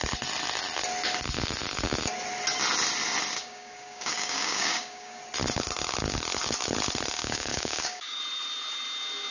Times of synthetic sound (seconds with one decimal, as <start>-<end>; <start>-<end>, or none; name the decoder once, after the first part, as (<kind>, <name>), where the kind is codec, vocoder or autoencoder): 3.4-5.2 (codec, DAC); 7.2-8.2